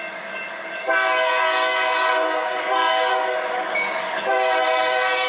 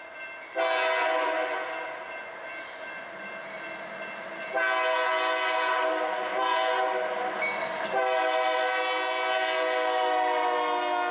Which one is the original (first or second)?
second